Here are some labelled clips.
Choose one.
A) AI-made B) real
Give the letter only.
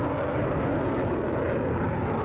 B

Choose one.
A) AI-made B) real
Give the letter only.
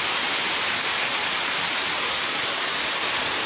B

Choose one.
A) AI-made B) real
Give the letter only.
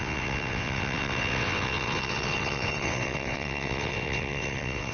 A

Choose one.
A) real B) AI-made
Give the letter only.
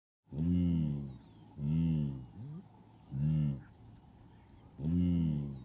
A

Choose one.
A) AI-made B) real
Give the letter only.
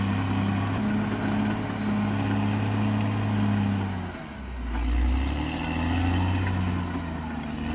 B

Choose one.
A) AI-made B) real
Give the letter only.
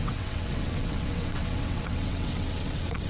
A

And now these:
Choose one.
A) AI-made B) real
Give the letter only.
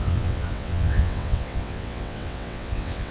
A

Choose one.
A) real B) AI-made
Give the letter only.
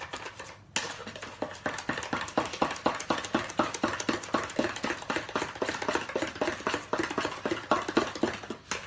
A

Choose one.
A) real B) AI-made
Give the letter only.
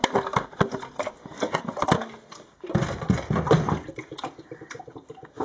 A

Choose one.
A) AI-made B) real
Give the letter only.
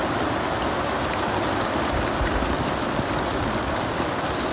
B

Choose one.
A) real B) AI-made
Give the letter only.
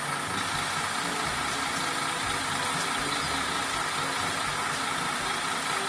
A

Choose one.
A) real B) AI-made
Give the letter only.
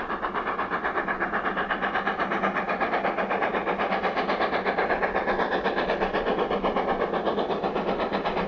A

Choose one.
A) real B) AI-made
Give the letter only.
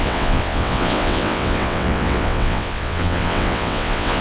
B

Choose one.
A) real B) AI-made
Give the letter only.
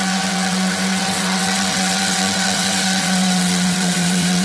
B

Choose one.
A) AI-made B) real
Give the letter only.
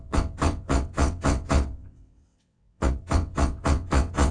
A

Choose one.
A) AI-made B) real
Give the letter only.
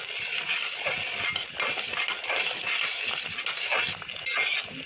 B